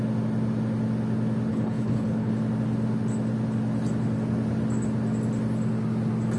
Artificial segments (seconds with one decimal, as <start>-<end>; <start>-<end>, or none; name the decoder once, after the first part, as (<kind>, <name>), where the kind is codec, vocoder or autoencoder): 1.5-2.3 (codec, HILCodec)